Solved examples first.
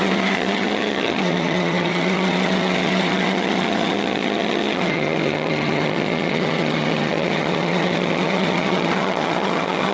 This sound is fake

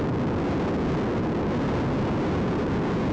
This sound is real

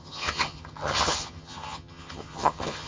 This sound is fake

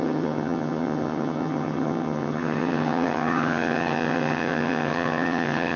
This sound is fake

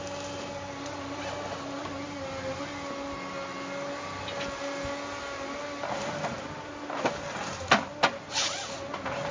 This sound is real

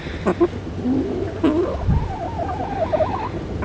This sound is real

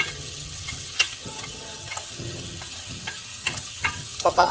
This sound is fake